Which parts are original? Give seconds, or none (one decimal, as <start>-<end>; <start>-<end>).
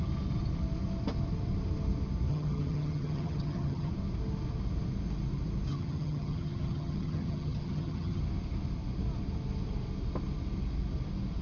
0.0-2.3; 3.9-5.7; 8.2-11.4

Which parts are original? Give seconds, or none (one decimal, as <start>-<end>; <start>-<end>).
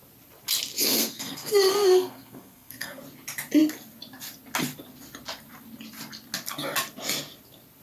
0.0-0.8; 3.0-7.8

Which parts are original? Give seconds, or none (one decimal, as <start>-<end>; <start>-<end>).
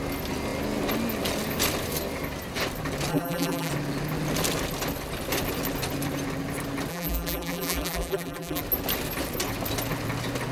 0.0-3.1; 3.7-6.9; 8.6-10.5